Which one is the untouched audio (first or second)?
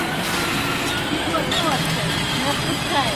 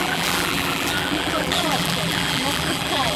first